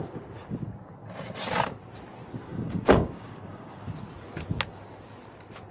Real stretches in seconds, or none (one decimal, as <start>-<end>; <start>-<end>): 0.0-2.5; 3.8-5.7